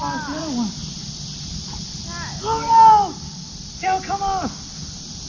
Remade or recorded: recorded